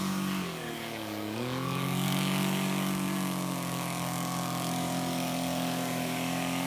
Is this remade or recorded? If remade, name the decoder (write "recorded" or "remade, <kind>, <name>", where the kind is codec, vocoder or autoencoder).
remade, codec, DAC